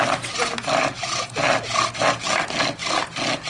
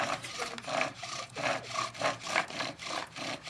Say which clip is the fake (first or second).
second